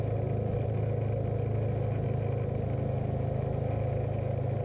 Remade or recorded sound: recorded